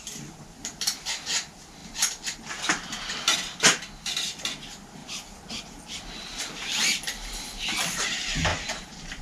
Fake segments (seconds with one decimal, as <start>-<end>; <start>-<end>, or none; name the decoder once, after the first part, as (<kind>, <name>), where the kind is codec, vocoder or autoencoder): 8.5-9.2 (vocoder, BigVGAN v2)